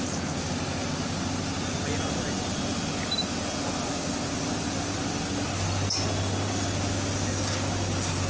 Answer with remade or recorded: recorded